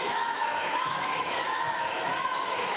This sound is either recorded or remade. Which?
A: remade